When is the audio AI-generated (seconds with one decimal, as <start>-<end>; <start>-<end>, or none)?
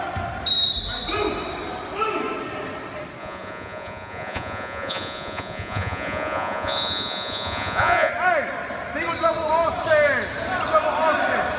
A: 3.2-8.1